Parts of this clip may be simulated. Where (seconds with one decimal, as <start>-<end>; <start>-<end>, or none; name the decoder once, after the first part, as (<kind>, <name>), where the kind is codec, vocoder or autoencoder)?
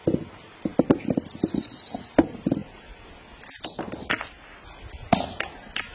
none